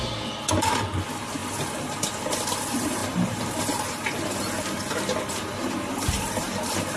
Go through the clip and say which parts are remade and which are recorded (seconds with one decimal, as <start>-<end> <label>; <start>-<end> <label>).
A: 0.0-7.0 recorded